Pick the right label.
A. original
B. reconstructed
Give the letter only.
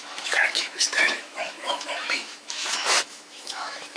B